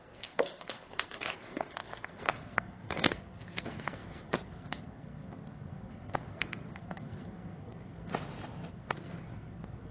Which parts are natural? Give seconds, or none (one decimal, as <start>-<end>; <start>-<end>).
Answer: 8.1-8.7